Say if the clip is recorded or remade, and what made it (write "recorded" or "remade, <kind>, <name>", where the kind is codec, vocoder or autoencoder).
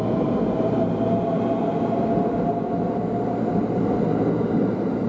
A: recorded